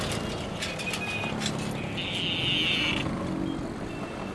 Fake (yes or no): no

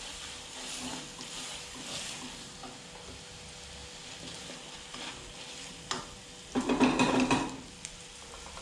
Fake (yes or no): no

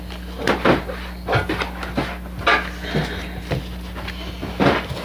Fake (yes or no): no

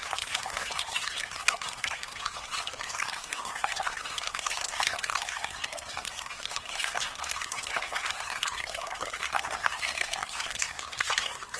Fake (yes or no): yes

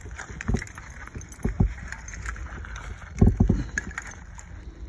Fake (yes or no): no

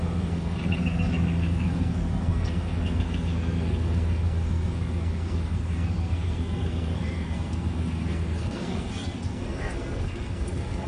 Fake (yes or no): yes